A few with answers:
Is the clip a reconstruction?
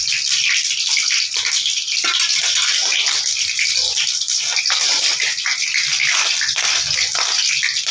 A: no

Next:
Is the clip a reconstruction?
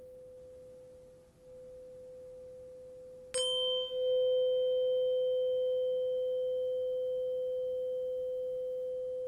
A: no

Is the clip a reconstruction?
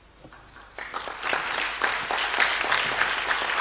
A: no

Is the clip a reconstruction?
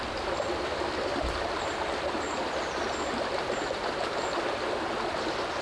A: no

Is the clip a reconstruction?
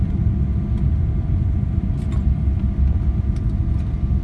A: no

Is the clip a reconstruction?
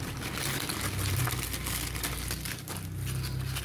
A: no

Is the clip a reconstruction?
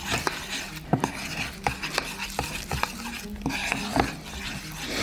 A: no